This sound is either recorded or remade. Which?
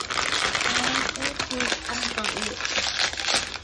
recorded